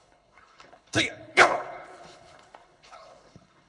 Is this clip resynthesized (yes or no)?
yes